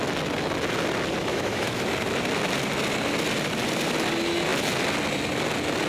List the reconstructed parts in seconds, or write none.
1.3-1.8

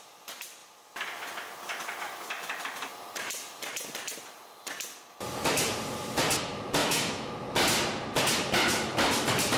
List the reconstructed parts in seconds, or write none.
6.8-7.3

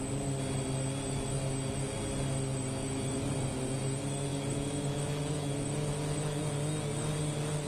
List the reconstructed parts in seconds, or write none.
4.3-6.4

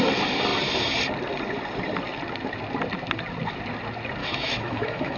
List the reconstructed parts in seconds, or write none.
4.2-5.2

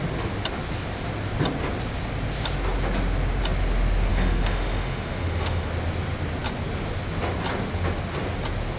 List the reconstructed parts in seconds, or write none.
4.1-5.7